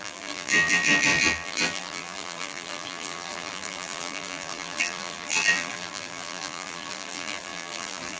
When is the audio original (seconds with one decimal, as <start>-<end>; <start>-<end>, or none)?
none